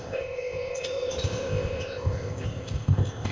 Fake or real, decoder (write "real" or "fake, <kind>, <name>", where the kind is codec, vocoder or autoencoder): fake, codec, ZipCodec